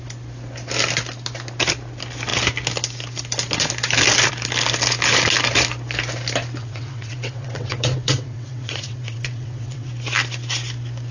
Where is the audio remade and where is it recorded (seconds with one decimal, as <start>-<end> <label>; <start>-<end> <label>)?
0.0-6.6 recorded; 6.6-9.9 remade; 9.9-11.1 recorded